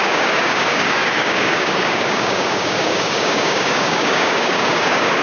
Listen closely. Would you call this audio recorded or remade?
remade